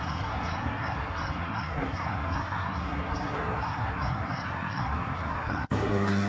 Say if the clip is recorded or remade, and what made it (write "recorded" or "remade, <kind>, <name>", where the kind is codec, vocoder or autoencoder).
remade, codec, SNAC